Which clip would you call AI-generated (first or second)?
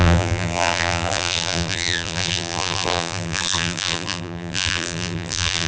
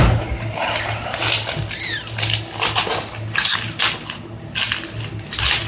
first